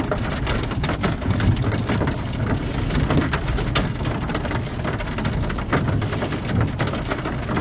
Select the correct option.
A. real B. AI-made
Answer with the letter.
A